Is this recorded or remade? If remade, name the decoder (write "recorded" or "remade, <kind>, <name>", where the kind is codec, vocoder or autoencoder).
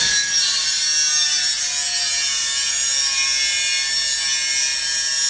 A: recorded